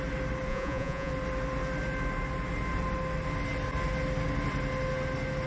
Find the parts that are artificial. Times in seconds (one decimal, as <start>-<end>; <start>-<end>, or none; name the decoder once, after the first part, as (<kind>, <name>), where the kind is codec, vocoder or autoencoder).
0.5-1.1 (vocoder, Vocos)